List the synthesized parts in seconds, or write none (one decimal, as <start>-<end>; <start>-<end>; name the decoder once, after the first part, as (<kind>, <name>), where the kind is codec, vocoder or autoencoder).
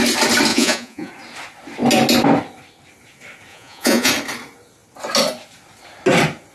0.5-1.1 (vocoder, Vocos); 3.5-4.1